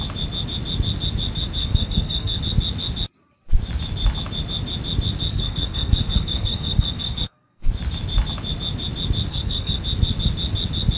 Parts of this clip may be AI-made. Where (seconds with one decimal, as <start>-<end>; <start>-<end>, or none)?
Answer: 1.6-2.4; 5.3-7.7; 9.3-9.8